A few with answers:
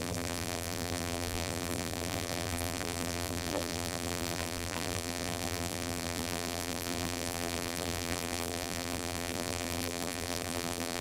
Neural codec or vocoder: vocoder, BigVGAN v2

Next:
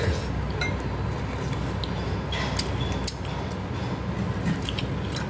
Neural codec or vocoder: none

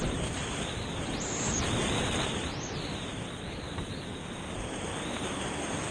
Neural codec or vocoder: none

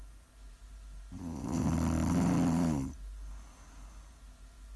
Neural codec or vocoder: none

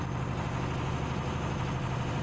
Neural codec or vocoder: none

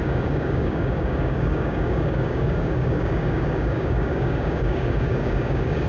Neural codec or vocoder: codec, DAC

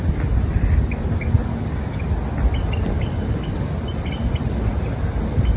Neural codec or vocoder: none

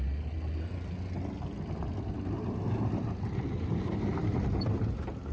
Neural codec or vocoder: none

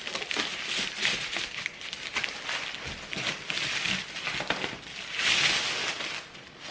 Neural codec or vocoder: none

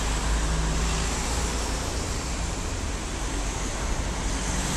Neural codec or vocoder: none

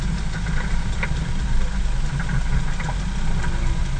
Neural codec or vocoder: none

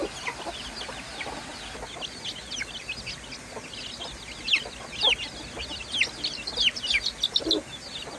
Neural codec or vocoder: none